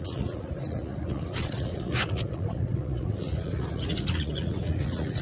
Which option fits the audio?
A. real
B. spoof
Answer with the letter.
B